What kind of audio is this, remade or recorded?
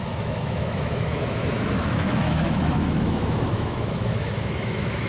remade